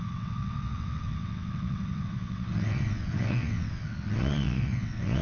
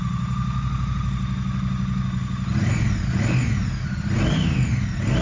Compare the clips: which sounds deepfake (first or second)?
first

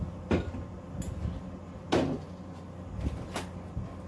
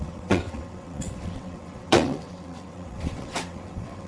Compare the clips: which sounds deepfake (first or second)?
second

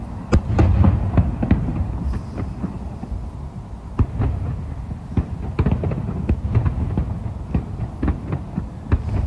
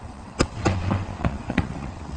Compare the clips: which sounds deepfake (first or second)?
second